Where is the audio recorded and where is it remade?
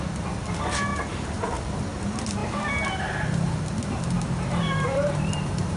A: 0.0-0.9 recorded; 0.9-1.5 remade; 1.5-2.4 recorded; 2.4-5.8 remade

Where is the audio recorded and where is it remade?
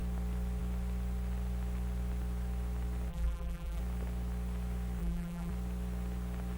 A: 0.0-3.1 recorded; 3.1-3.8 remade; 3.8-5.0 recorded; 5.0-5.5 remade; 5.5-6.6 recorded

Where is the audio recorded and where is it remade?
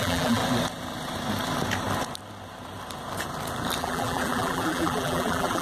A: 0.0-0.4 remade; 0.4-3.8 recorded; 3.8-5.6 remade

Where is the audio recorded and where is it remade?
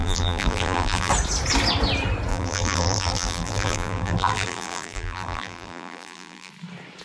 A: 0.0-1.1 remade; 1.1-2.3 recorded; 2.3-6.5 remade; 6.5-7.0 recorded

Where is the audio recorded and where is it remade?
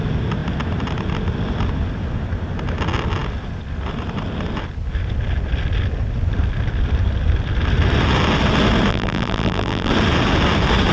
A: 0.0-8.9 recorded; 8.9-9.9 remade; 9.9-10.9 recorded